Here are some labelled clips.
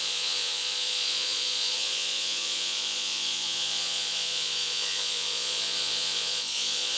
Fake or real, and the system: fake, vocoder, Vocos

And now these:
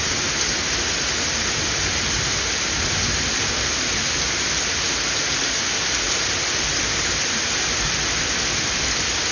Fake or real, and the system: real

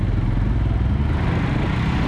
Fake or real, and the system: real